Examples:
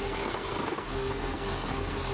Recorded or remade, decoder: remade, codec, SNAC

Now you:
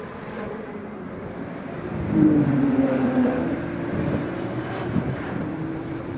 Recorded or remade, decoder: remade, vocoder, BigVGAN v2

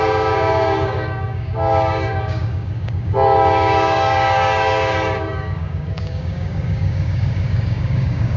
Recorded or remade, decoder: remade, codec, DAC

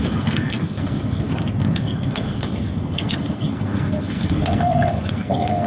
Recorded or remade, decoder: remade, codec, SNAC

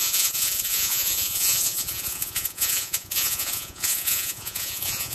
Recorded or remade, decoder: remade, vocoder, Vocos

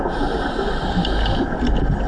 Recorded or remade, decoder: recorded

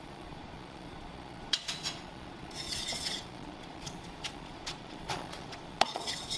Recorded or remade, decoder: remade, vocoder, Vocos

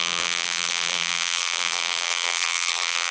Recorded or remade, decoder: remade, vocoder, BigVGAN v2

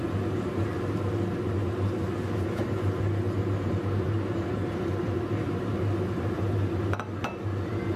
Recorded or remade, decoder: recorded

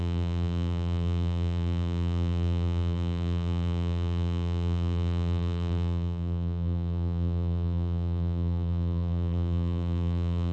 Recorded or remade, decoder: remade, vocoder, BigVGAN v2